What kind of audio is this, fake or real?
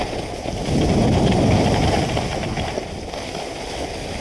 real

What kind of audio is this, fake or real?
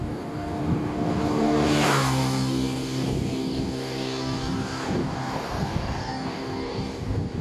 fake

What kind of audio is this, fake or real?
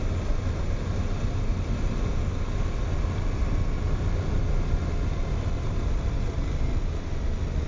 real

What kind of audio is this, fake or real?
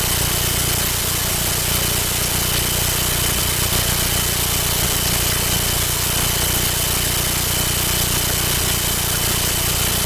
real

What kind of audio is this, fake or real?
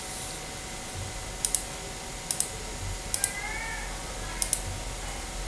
real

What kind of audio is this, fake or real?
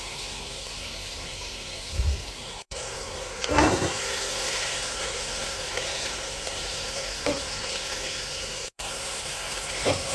fake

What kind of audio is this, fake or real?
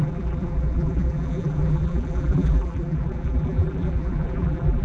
fake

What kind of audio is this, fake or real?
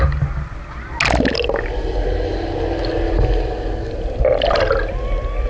real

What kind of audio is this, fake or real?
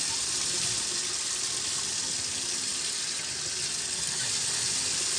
real